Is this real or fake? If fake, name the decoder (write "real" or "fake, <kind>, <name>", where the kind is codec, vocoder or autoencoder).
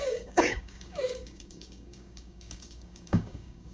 fake, codec, DAC